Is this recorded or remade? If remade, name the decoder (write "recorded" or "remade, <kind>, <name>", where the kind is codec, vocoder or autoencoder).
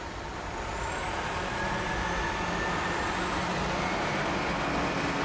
recorded